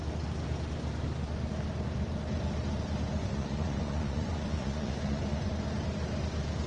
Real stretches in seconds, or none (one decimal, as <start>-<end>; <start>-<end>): 0.0-3.2; 5.5-6.7

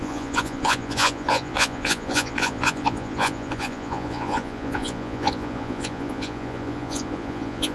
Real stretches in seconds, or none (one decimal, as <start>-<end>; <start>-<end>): none

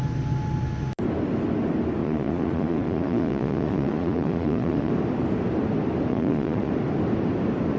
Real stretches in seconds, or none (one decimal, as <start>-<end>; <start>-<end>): 0.0-2.0; 4.9-6.1; 6.7-7.8

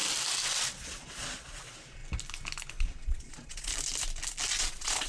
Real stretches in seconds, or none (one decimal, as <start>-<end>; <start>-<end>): 0.0-0.8; 2.0-2.7; 3.7-4.6

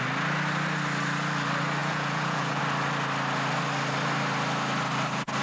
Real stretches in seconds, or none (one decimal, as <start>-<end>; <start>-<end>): 0.0-1.8; 2.6-5.4

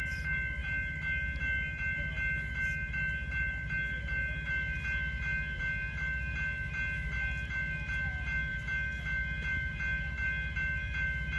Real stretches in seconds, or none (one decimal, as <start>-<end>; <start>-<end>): 0.0-11.4

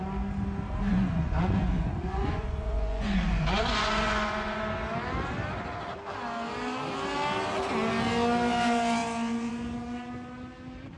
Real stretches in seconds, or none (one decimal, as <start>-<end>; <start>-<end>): 0.0-0.9; 4.6-11.0